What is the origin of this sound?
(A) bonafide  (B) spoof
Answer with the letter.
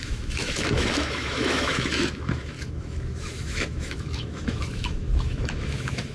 B